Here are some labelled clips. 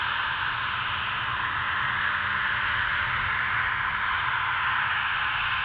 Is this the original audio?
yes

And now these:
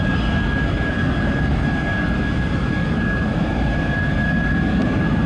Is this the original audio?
yes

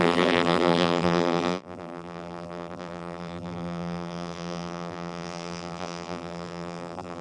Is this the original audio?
no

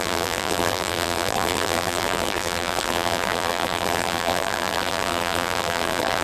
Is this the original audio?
no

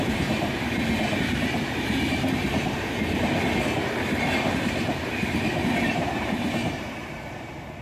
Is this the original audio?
no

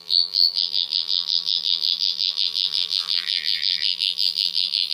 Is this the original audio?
no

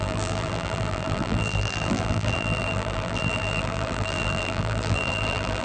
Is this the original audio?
no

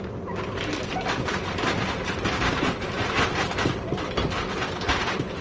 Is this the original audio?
no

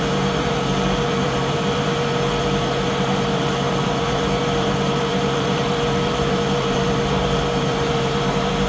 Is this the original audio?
no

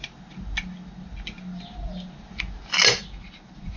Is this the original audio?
yes